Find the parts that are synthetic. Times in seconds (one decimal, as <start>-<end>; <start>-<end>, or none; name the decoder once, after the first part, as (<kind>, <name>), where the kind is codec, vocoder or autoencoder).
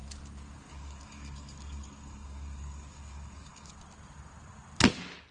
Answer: 0.7-3.7 (codec, DAC)